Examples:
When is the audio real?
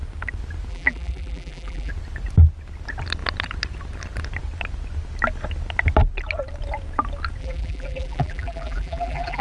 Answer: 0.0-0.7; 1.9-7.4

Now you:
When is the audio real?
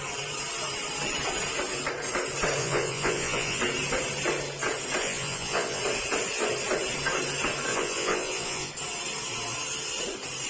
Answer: 0.0-2.6; 3.6-5.0; 5.8-7.7; 8.7-10.5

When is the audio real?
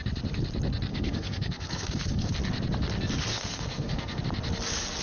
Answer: 0.0-0.9; 2.3-3.3; 4.2-5.0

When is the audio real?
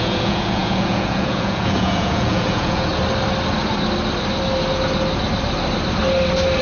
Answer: 2.9-6.6